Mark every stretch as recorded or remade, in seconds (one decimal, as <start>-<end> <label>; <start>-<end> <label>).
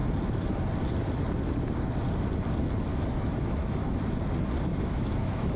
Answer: 0.0-2.9 recorded; 2.9-4.0 remade; 4.0-4.7 recorded; 4.7-5.6 remade